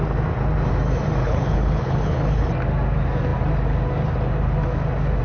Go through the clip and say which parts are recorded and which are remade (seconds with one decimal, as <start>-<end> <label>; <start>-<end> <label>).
0.0-1.2 recorded; 1.2-2.4 remade; 2.4-5.2 recorded